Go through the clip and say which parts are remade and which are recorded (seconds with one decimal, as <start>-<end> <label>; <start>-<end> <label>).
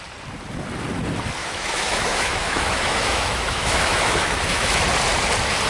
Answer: 0.0-1.4 recorded; 1.4-4.8 remade; 4.8-5.7 recorded